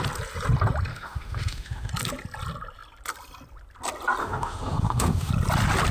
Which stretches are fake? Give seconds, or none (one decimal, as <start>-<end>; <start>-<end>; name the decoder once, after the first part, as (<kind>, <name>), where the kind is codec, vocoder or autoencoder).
0.9-1.9 (autoencoder, DAC-VAE); 4.2-5.3